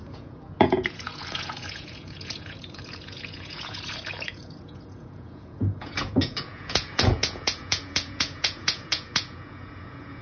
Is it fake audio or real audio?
fake